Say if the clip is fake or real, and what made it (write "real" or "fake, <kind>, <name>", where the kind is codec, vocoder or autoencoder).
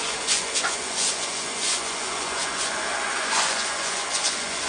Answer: fake, vocoder, Vocos